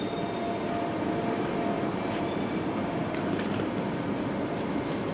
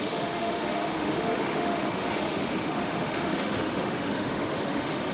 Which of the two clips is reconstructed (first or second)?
second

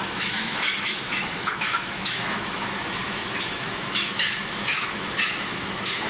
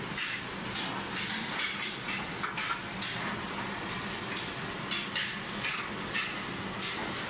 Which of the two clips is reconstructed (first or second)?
first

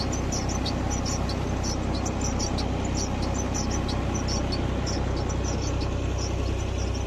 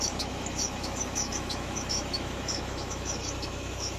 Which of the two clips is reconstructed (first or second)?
second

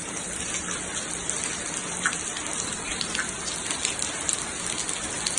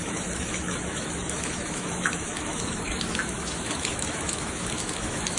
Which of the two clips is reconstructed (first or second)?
second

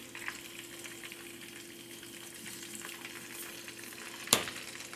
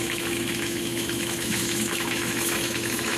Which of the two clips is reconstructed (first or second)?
second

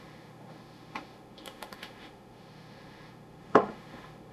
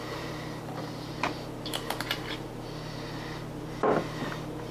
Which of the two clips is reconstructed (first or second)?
first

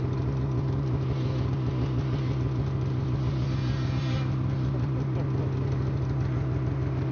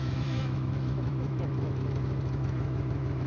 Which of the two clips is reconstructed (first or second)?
second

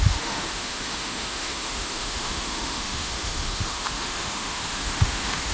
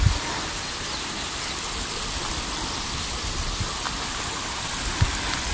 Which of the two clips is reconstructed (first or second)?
first